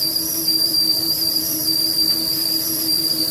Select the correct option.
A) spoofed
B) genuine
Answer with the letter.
A